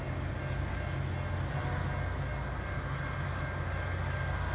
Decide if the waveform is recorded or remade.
recorded